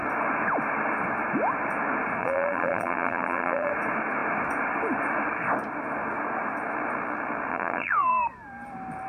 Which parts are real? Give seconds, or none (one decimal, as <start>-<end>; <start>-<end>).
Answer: 0.0-2.2; 3.7-7.5; 8.1-9.1

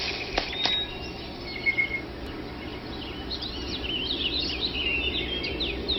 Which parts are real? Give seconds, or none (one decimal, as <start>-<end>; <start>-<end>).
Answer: 0.0-6.0

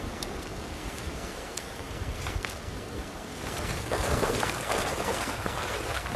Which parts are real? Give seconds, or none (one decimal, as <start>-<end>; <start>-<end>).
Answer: none

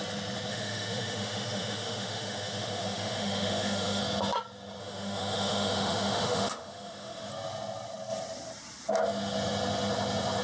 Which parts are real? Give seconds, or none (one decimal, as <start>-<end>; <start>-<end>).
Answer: 0.0-0.5; 4.0-4.8; 7.3-10.4

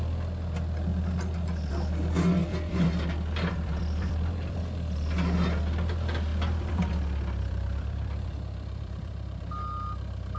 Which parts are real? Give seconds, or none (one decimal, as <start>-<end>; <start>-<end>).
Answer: 0.0-2.4; 4.6-6.3; 9.5-10.4

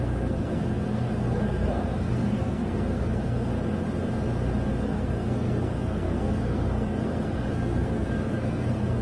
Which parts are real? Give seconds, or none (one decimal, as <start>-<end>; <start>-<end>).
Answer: 3.5-4.8

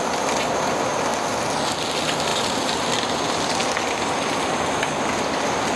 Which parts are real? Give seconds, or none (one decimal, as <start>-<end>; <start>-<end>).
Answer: 0.0-2.3; 3.1-5.8